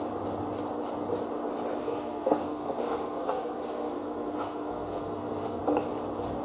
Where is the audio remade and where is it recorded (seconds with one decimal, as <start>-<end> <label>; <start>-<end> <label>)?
0.0-1.8 recorded; 1.8-5.6 remade; 5.6-6.4 recorded